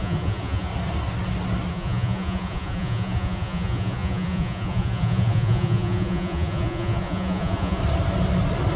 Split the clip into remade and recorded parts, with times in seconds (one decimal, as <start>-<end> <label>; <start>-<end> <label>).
0.0-0.7 remade; 0.7-1.7 recorded; 1.7-7.8 remade; 7.8-8.8 recorded